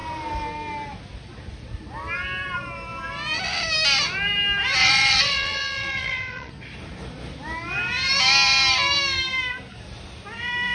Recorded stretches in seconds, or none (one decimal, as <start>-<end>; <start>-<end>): 0.0-4.8; 6.5-10.7